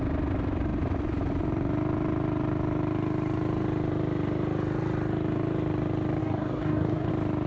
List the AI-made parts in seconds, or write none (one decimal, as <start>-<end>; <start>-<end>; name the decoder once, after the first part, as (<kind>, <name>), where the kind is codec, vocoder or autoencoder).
6.2-7.1 (codec, DAC)